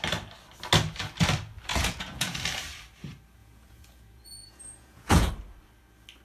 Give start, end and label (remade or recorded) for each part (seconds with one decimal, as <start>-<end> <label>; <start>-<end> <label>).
0.0-1.7 recorded; 1.7-2.4 remade; 2.4-3.4 recorded; 3.4-5.3 remade; 5.3-6.2 recorded